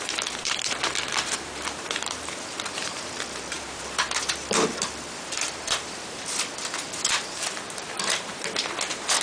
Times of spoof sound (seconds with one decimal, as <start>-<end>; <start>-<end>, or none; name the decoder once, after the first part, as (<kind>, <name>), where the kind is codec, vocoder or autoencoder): 0.0-9.2 (vocoder, BigVGAN v2)